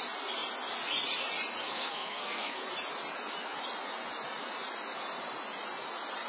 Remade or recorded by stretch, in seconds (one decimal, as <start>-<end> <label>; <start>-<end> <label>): 0.0-1.6 recorded; 1.6-2.6 remade; 2.6-6.3 recorded